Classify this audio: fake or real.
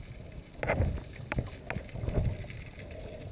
real